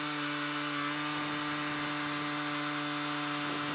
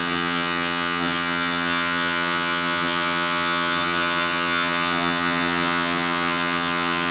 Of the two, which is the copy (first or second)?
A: second